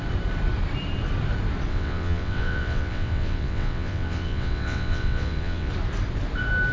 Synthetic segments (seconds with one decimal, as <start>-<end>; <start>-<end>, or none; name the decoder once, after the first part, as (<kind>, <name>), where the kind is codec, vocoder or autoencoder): 1.7-5.7 (vocoder, WaveNeXt)